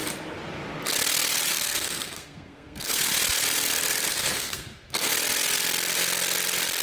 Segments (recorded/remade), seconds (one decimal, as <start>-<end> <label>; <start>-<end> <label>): 0.0-1.5 recorded; 1.5-3.1 remade; 3.1-4.1 recorded; 4.1-5.1 remade; 5.1-6.8 recorded